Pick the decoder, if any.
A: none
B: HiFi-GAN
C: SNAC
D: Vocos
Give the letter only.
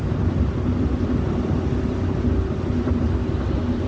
A